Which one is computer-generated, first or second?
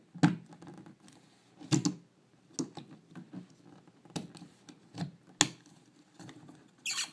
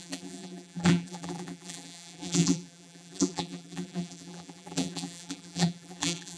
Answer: second